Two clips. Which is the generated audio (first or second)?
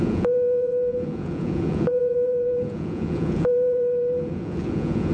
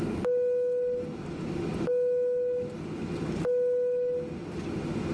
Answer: first